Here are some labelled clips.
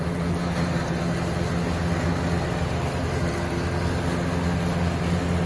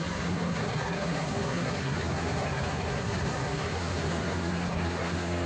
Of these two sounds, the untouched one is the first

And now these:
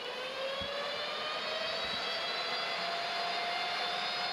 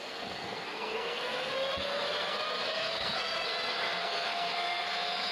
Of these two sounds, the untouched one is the first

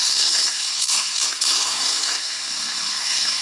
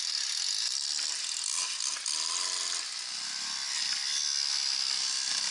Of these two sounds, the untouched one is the second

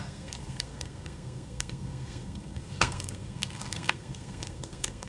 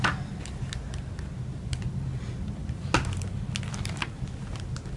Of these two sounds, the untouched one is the second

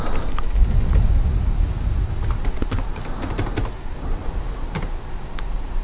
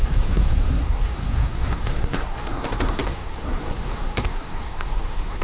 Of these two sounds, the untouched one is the first